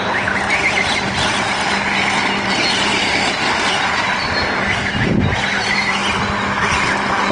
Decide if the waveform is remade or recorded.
recorded